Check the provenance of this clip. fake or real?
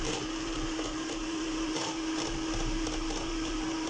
fake